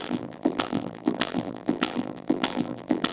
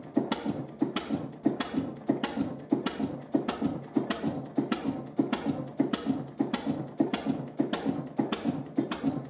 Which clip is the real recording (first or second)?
second